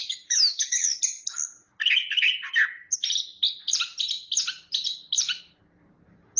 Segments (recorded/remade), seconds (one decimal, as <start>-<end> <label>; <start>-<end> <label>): 0.0-1.0 remade; 1.0-6.4 recorded